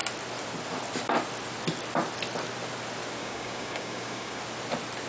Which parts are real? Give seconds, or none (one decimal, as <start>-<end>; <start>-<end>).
0.0-3.2; 4.4-5.1